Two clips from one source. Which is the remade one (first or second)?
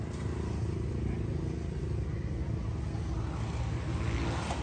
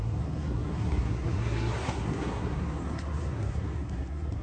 second